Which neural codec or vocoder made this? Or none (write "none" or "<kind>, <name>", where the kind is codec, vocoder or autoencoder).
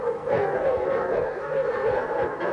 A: codec, SNAC